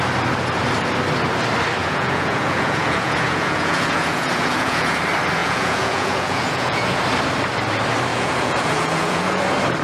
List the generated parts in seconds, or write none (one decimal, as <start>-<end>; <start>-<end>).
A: 1.8-5.0; 5.4-7.0; 8.1-9.4